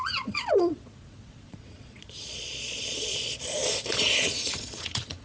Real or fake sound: fake